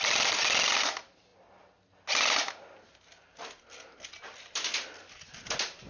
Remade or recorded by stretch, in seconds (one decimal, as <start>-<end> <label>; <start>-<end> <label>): 0.0-5.9 recorded